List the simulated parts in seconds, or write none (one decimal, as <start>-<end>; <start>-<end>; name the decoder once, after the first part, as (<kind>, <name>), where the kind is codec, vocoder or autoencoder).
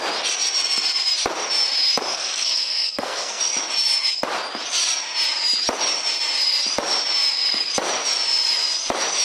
2.1-3.4 (codec, SNAC)